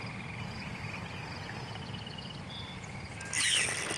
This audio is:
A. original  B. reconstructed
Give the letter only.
A